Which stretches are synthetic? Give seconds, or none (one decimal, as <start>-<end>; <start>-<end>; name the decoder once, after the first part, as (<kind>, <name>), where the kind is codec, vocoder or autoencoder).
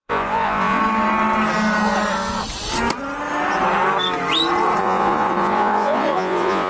0.0-0.8 (vocoder, Vocos); 4.8-6.7